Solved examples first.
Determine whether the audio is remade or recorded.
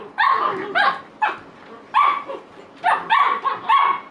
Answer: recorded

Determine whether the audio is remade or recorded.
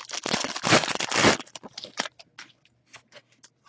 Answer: recorded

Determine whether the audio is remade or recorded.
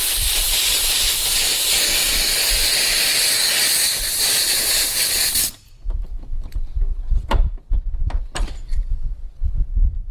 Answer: recorded